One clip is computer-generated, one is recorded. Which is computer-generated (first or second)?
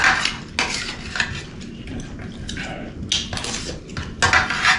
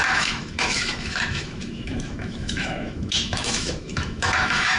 second